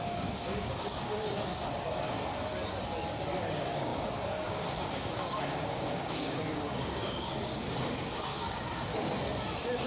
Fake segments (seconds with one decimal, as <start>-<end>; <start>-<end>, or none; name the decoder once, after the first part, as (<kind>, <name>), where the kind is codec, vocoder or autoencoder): 0.0-1.5 (codec, DAC); 3.5-8.9

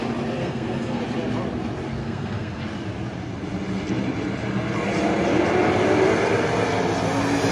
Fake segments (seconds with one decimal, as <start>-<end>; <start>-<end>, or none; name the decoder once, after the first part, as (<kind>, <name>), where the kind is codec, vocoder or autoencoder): 0.4-1.0 (codec, SNAC); 2.0-2.6